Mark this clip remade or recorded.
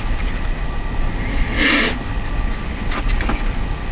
recorded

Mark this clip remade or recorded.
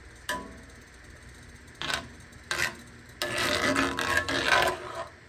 recorded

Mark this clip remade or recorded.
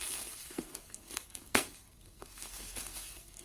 remade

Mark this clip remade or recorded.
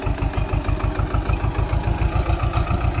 recorded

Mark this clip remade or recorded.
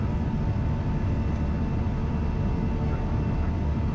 recorded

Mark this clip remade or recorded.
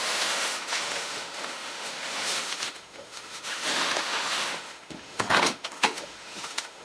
remade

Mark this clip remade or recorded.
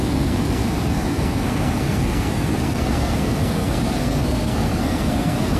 remade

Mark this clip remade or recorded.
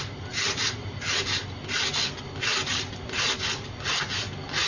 recorded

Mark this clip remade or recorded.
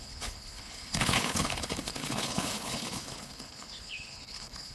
remade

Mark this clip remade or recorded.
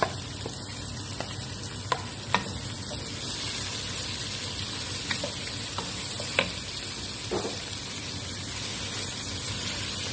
recorded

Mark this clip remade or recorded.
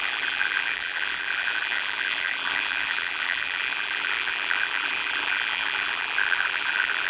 remade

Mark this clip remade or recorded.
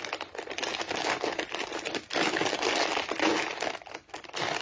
recorded